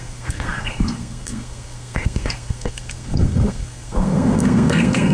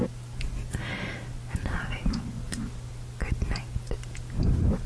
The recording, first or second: second